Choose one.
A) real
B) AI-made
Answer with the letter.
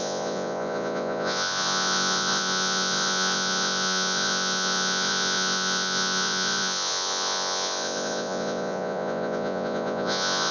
B